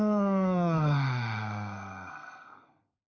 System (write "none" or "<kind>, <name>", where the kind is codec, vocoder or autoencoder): codec, SNAC